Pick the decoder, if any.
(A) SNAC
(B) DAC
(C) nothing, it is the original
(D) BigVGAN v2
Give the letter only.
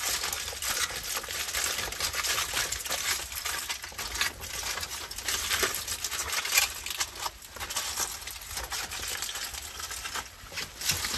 C